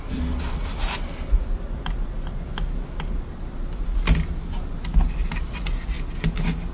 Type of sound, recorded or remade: recorded